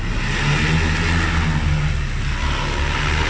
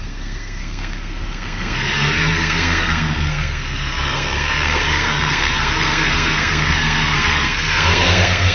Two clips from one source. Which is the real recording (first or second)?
first